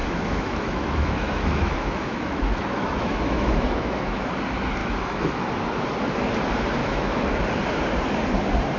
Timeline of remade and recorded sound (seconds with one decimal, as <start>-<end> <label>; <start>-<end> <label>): 0.0-4.3 remade; 4.3-4.8 recorded; 4.8-5.5 remade; 5.5-6.8 recorded; 6.8-7.4 remade; 7.4-8.8 recorded